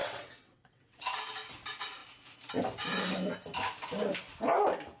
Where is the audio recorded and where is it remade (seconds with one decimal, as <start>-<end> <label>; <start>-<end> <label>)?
0.0-1.2 remade; 1.2-5.0 recorded